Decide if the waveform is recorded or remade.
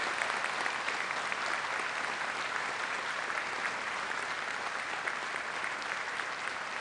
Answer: recorded